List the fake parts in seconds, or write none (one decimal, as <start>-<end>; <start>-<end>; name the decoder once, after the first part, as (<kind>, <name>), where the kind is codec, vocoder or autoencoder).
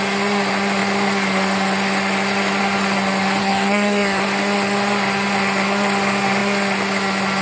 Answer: 3.4-4.2 (codec, SNAC)